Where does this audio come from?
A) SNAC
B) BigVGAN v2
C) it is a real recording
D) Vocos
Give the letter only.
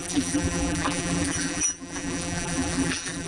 B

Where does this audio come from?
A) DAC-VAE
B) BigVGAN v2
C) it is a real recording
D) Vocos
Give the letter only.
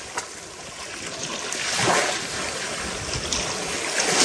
C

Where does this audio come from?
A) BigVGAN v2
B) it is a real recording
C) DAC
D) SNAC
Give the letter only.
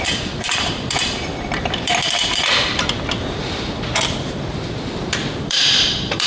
A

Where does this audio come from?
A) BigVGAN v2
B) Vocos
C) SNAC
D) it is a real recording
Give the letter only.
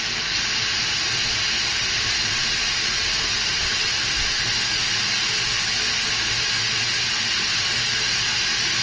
D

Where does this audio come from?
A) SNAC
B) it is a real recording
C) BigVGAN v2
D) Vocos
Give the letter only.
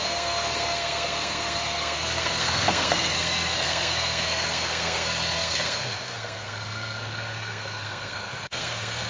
A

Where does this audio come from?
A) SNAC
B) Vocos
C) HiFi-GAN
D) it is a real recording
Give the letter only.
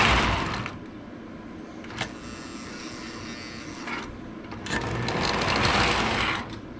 D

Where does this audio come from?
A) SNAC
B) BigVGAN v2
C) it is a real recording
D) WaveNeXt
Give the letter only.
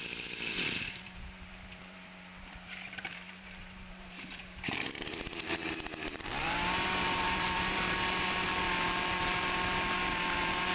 B